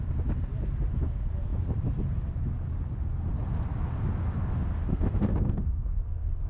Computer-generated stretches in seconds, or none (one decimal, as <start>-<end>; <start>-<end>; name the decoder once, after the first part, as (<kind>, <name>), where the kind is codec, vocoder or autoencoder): 4.9-6.5 (codec, SNAC)

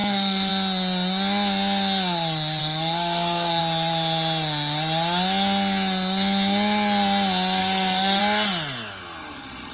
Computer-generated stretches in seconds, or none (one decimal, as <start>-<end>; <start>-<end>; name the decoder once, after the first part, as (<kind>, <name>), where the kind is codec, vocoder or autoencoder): 0.0-0.5 (codec, SNAC); 2.6-3.6; 7.6-8.2